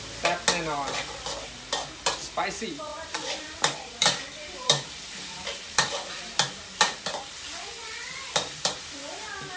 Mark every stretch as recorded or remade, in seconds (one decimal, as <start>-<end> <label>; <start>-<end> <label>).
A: 0.0-2.9 recorded; 2.9-7.1 remade; 7.1-7.8 recorded; 7.8-8.8 remade; 8.8-9.6 recorded